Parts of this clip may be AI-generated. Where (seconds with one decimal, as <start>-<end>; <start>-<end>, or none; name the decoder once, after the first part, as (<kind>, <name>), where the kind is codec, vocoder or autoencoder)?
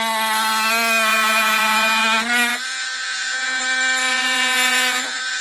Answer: 1.1-2.0 (vocoder, Vocos); 2.5-3.6; 4.1-5.4